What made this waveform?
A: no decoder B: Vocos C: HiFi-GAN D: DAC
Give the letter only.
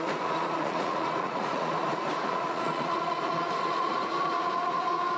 B